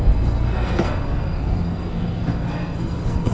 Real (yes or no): no